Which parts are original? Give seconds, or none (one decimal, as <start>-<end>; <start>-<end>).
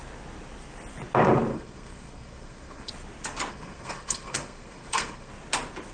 0.0-1.5; 2.9-3.5; 5.3-5.9